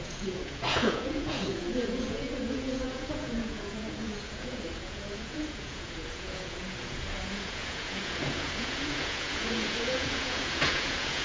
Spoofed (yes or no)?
yes